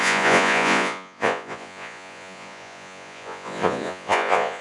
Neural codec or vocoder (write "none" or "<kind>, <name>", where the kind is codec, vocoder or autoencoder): vocoder, Vocos